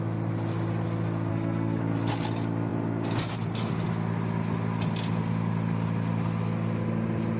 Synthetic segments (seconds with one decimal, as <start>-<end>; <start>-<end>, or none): 1.3-1.8